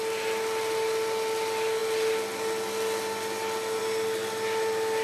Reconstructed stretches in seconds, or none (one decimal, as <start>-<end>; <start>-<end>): none